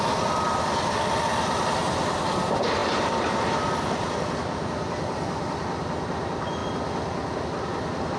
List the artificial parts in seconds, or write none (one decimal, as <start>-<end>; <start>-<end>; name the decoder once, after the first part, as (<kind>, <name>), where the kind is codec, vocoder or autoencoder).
none

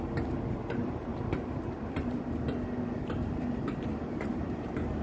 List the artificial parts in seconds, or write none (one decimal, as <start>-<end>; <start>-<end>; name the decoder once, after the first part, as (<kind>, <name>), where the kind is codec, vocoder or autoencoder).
0.0-1.1 (vocoder, BigVGAN v2); 4.1-5.0

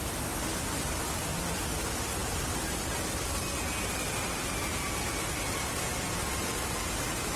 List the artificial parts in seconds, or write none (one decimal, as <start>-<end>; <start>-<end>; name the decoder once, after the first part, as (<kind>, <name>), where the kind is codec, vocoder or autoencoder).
none

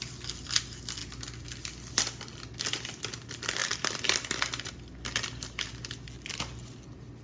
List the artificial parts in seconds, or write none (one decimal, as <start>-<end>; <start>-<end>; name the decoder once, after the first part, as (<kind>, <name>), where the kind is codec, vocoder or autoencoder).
3.6-4.7 (vocoder, BigVGAN v2)